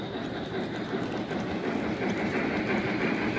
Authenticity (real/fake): real